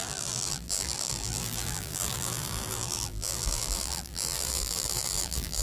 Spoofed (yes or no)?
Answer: yes